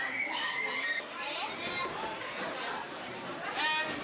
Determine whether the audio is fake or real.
real